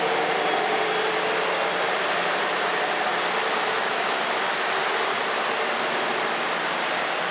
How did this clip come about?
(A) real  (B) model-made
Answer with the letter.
A